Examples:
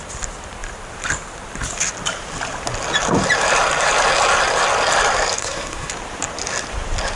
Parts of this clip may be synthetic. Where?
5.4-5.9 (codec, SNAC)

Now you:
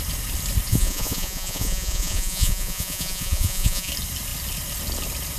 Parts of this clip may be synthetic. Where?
0.7-3.9 (vocoder, Vocos)

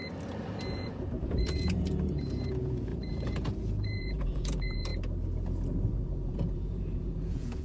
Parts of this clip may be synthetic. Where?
0.7-4.9 (vocoder, Vocos); 5.8-7.6

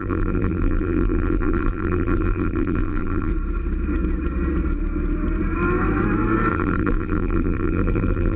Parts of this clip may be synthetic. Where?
0.0-3.3 (vocoder, BigVGAN v2); 6.5-8.4

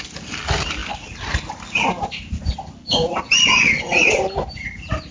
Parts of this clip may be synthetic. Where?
3.5-4.2 (vocoder, WaveNeXt)

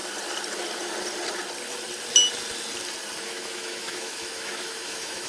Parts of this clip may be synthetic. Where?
3.2-5.3 (autoencoder, DAC-VAE)

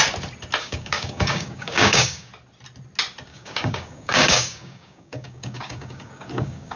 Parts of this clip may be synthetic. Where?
0.6-2.3 (codec, DAC); 3.3-6.8